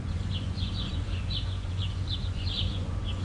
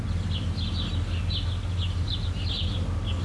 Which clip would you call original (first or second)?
second